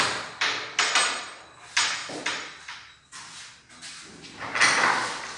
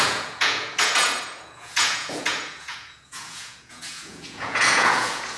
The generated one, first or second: second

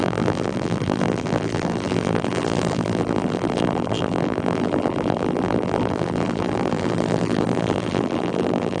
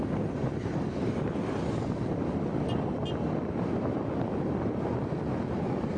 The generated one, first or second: first